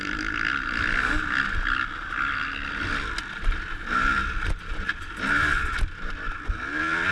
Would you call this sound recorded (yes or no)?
yes